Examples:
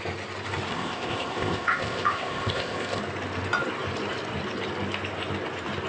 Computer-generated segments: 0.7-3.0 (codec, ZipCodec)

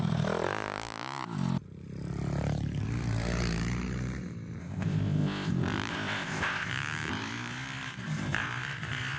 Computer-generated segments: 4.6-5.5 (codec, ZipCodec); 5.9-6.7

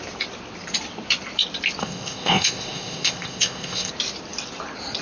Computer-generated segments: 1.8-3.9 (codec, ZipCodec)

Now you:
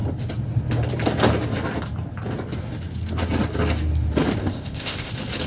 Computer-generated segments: 4.4-5.1 (codec, ZipCodec)

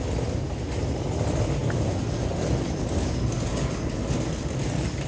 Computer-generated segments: none

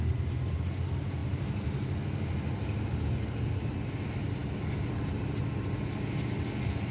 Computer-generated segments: none

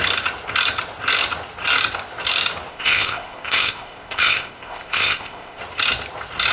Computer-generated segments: 2.7-5.6 (codec, ZipCodec)

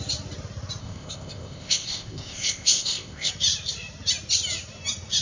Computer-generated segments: 0.8-3.3 (codec, ZipCodec)